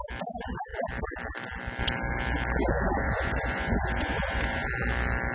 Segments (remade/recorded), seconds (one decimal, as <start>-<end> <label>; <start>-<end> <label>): 0.0-2.7 recorded; 2.7-4.7 remade; 4.7-5.3 recorded